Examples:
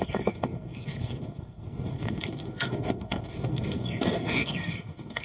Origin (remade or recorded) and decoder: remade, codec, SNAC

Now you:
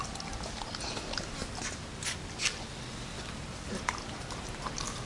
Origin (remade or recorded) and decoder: recorded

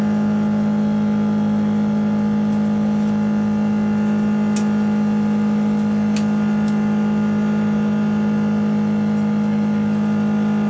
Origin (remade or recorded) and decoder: recorded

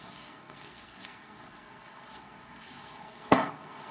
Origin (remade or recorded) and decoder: remade, codec, SNAC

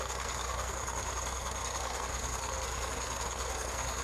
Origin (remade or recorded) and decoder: remade, codec, SNAC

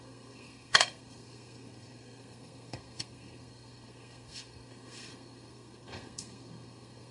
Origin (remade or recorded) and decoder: remade, codec, SNAC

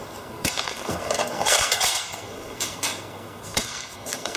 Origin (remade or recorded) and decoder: remade, codec, SNAC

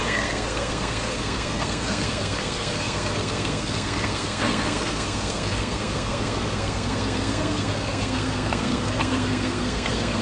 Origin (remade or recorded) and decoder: remade, codec, SNAC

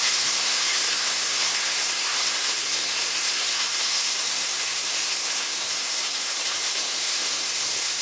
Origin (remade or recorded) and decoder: remade, codec, SNAC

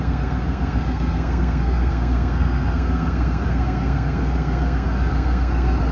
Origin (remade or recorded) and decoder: remade, codec, SNAC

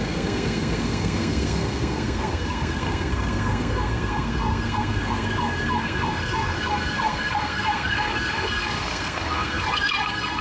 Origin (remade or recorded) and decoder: remade, codec, SNAC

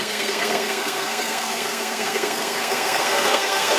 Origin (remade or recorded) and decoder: remade, codec, SNAC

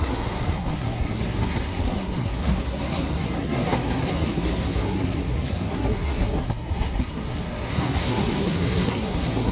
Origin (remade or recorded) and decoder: remade, codec, SNAC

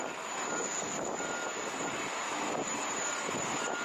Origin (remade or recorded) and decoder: recorded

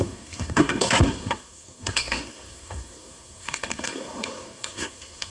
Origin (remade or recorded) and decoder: remade, codec, SNAC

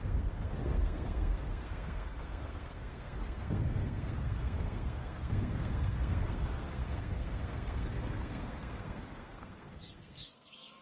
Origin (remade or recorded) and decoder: remade, codec, SNAC